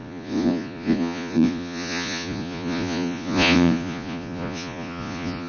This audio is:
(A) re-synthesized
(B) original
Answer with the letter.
A